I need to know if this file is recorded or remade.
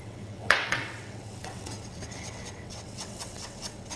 remade